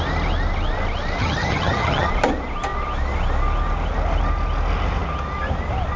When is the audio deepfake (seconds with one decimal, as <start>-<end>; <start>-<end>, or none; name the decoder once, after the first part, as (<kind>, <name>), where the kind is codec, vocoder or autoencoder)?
1.2-2.1 (vocoder, HiFi-GAN)